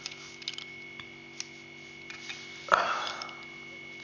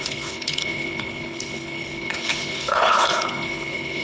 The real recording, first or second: first